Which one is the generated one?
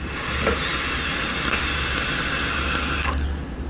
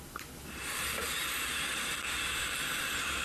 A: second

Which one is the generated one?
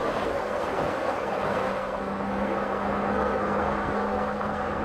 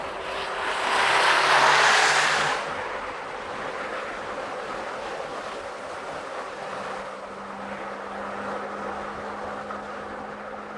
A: first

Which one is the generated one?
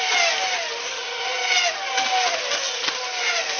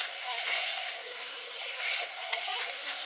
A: second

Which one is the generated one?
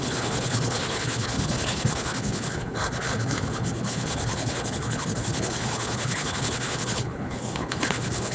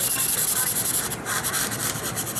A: first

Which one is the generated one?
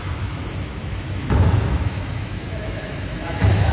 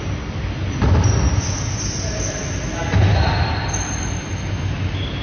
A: first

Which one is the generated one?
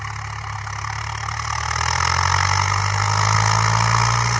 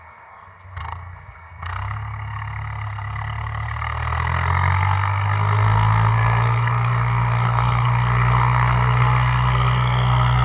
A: second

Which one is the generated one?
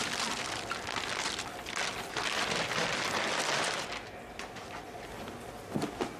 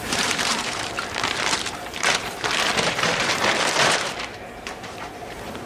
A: second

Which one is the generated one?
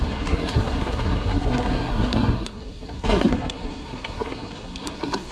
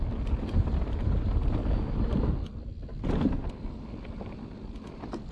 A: first